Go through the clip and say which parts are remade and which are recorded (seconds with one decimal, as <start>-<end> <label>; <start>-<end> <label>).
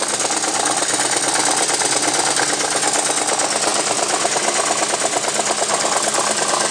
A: 0.0-6.7 recorded